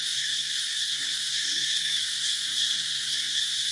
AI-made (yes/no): yes